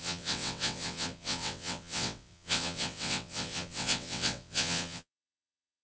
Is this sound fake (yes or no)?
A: yes